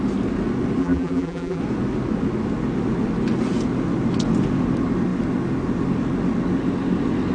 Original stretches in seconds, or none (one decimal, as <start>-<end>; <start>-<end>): 0.0-0.8; 1.6-7.3